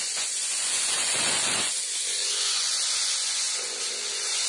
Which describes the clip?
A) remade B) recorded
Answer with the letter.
A